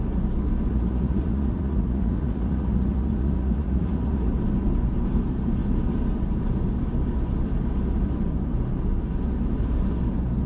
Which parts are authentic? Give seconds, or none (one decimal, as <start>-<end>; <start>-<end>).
0.0-0.7; 4.3-10.5